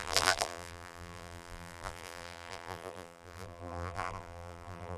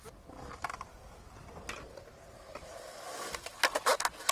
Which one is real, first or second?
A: second